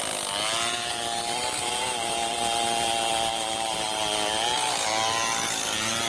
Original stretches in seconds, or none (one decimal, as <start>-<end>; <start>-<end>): 0.0-0.7; 2.4-3.3; 4.0-6.1